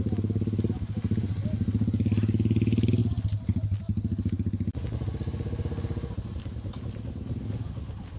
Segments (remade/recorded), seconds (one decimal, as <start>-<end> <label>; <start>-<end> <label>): 0.0-8.2 recorded

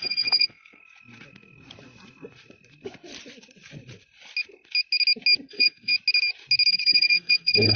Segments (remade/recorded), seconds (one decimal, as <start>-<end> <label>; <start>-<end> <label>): 0.0-0.8 remade; 0.8-5.5 recorded; 5.5-5.9 remade; 5.9-6.7 recorded; 6.7-7.8 remade

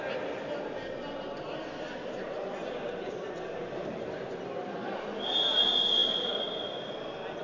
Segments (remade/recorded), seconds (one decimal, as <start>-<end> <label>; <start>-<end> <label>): 0.0-7.4 recorded

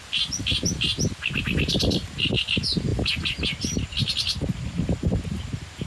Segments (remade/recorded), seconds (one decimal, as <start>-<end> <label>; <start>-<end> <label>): 0.0-5.9 recorded

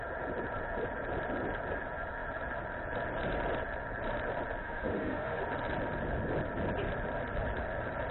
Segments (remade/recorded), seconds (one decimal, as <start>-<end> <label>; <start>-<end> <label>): 0.0-4.6 recorded; 4.6-5.4 remade; 5.4-8.1 recorded

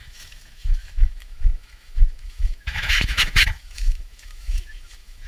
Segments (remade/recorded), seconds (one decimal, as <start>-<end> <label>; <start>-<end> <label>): 0.0-5.3 remade

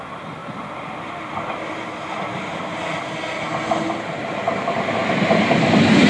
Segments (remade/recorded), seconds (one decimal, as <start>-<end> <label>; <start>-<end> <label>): 0.0-6.1 recorded